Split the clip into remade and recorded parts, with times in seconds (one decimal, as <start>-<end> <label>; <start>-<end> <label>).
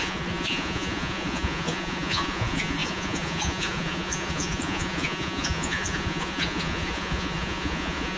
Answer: 0.0-8.2 remade